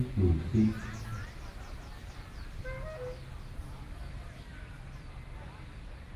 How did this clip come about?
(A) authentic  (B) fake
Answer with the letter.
A